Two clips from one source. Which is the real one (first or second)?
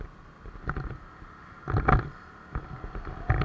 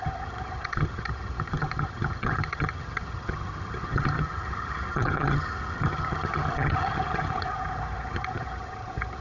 first